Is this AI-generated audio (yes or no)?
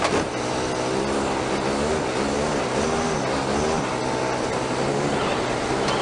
no